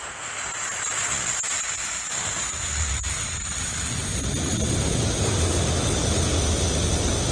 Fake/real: real